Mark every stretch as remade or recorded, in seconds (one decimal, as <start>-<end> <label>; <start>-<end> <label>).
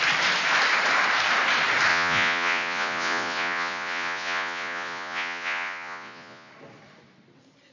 0.0-1.9 recorded; 1.9-6.5 remade; 6.5-7.7 recorded